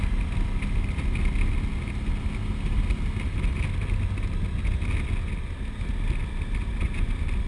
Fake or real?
real